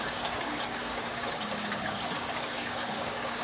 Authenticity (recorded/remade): remade